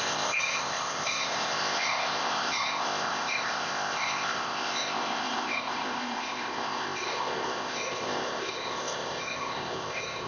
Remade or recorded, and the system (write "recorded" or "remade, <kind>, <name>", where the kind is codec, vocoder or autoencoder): remade, codec, ZipCodec